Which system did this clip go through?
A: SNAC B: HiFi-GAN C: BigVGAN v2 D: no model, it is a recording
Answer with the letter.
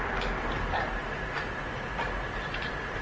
C